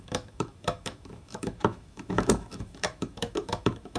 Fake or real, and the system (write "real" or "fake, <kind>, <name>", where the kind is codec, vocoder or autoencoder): fake, autoencoder, DAC-VAE